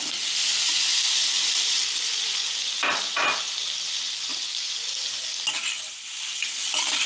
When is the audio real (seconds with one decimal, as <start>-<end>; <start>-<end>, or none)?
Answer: 0.0-7.1